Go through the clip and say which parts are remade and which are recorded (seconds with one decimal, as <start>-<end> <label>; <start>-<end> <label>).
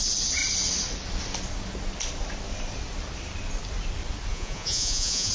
0.0-4.3 recorded; 4.3-5.3 remade